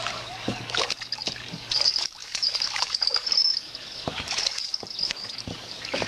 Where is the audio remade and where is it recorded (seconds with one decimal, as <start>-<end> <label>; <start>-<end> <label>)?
0.0-6.1 remade